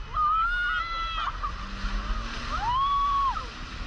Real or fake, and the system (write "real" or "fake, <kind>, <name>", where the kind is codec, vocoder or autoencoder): real